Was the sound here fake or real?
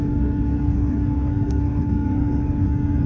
fake